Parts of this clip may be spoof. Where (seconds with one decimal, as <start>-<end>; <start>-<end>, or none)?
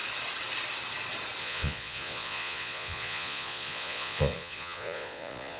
1.4-5.6